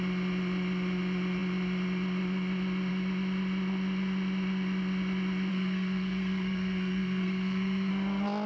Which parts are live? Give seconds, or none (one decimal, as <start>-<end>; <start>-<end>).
0.0-5.5; 7.9-8.5